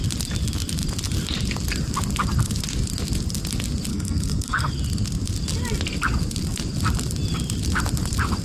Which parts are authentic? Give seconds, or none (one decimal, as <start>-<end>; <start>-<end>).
0.0-3.9; 4.7-8.4